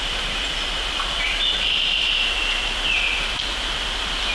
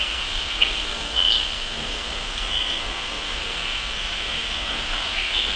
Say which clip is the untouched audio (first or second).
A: first